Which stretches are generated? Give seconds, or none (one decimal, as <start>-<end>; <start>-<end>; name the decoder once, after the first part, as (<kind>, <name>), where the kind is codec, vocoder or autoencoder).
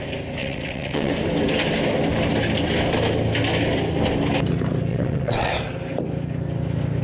0.4-1.1 (vocoder, WaveNeXt); 4.9-5.5